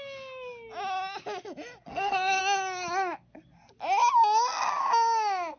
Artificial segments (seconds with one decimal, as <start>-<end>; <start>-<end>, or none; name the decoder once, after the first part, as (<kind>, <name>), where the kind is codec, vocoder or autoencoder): 1.9-2.4 (codec, SNAC)